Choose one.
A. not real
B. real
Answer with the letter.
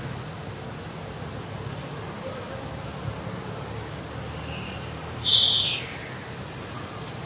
B